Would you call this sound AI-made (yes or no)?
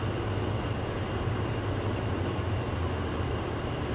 no